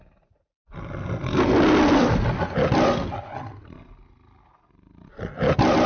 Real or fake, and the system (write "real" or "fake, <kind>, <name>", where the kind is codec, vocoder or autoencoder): real